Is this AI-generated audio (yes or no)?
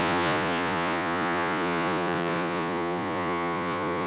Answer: yes